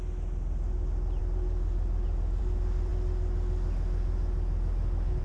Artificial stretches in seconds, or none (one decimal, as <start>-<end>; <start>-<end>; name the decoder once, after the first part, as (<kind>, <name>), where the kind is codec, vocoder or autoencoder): none